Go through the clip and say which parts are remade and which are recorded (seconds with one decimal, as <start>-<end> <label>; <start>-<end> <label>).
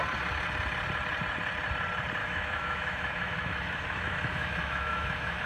0.0-2.2 recorded; 2.2-5.5 remade